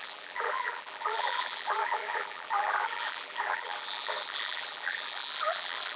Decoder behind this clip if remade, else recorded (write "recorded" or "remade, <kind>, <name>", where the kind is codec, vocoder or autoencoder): remade, vocoder, BigVGAN v2